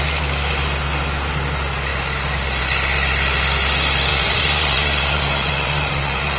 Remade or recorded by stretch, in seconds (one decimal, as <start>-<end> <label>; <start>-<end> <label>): 0.0-4.1 recorded; 4.1-6.4 remade